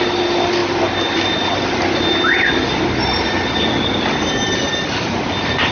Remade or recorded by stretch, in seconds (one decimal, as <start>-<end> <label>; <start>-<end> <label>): 0.0-5.7 recorded